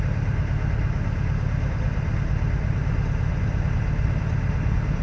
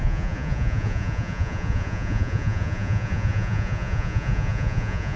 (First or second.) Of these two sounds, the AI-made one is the second